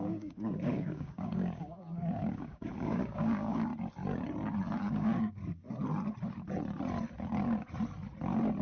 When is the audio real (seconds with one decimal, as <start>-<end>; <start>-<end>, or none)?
3.7-4.8; 5.4-8.6